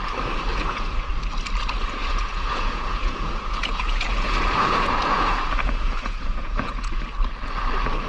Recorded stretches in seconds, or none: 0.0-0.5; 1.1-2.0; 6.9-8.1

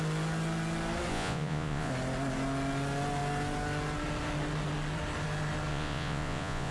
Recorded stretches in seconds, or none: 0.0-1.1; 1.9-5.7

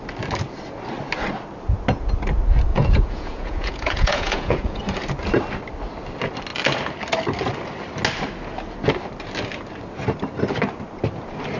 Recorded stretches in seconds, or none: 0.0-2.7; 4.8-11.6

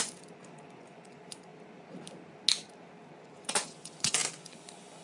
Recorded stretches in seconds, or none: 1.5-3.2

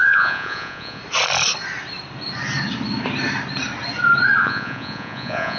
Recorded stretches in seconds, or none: 1.0-4.4

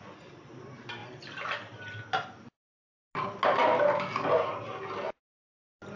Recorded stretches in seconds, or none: 0.0-6.0